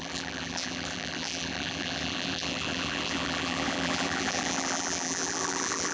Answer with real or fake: fake